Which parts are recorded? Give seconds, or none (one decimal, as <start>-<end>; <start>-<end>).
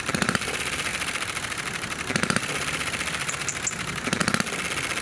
4.2-5.0